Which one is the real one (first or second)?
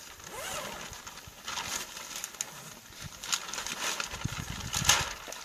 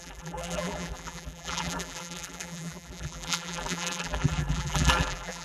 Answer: first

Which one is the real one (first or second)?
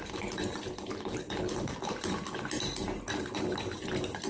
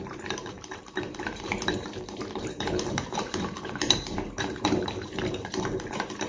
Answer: first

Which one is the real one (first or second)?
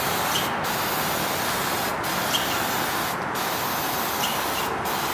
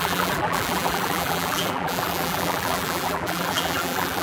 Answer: first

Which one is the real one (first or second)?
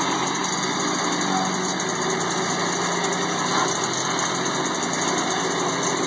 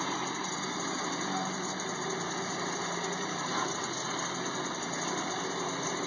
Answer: first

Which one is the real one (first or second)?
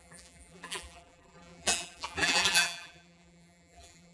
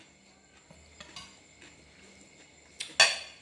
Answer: second